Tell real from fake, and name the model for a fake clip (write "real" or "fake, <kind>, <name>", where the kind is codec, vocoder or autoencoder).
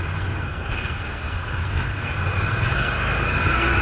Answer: fake, codec, SNAC